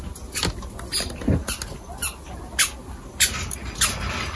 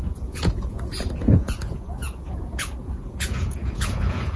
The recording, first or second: first